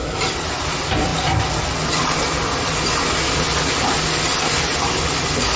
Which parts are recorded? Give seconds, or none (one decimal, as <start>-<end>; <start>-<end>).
1.1-4.5